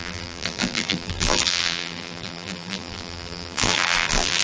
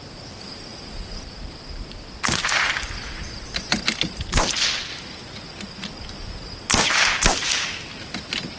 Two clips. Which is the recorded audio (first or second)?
second